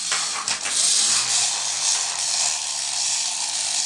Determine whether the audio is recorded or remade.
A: recorded